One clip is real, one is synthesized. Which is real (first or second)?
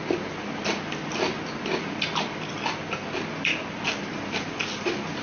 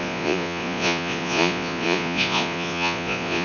first